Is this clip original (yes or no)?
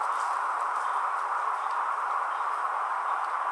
yes